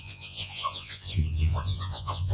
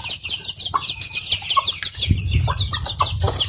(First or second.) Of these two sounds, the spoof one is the first